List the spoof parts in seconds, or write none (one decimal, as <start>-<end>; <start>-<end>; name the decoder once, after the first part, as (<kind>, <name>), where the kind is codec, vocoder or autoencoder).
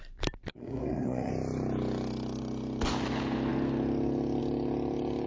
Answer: 0.5-1.3 (codec, SNAC)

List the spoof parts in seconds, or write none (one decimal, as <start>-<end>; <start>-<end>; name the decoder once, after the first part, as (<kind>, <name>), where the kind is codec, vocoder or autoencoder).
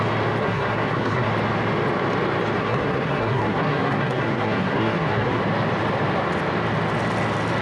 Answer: 0.4-1.3 (codec, SNAC); 2.6-5.4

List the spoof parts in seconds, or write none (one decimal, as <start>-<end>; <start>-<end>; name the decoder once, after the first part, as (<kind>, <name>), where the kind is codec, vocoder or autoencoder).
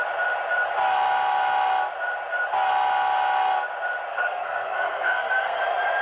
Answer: 4.1-5.6 (codec, SNAC)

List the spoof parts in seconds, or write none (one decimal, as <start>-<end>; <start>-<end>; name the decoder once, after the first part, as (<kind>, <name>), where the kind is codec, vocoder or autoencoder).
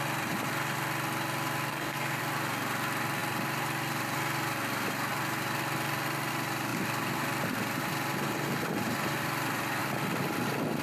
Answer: 1.7-2.2 (codec, SNAC)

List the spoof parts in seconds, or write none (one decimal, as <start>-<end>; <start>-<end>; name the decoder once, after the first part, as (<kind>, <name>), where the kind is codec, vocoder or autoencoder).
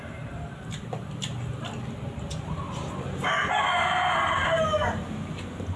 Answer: none